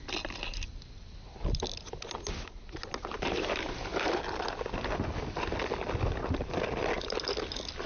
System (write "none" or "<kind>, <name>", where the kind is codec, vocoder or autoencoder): none